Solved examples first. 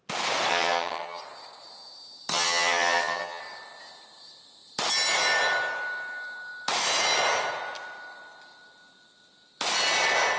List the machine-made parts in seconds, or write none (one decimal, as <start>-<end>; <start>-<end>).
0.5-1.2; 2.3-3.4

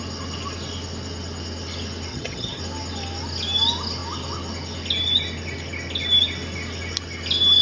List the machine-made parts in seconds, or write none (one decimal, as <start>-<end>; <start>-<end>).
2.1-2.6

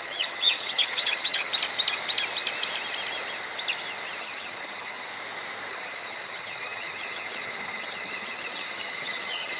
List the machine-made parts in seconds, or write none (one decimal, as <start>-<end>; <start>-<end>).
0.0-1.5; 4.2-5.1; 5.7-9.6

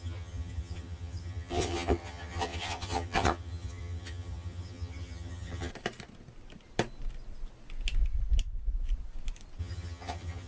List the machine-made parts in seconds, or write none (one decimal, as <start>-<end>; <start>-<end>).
0.0-5.7; 9.6-10.5